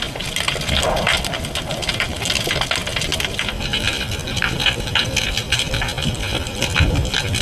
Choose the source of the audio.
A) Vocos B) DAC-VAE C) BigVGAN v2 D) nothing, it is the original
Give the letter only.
D